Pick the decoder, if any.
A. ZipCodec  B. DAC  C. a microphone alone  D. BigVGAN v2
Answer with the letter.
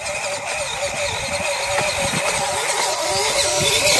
C